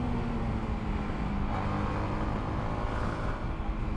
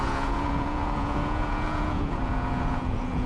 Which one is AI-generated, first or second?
second